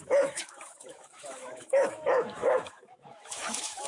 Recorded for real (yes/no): no